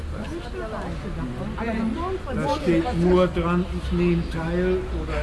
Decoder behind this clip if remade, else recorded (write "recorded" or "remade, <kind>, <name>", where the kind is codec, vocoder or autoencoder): recorded